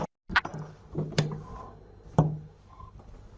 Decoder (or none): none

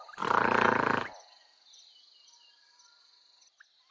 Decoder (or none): none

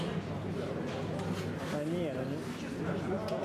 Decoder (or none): none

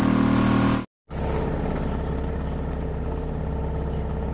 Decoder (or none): none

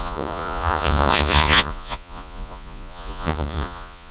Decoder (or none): vocoder, Vocos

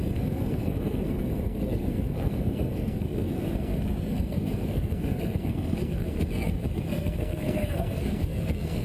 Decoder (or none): codec, SNAC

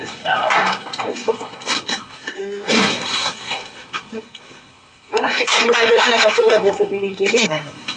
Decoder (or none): codec, SNAC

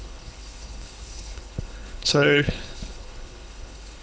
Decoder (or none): codec, HILCodec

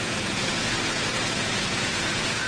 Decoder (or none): vocoder, Vocos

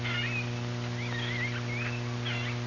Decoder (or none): none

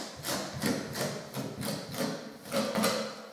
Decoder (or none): none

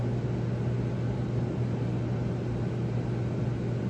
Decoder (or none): none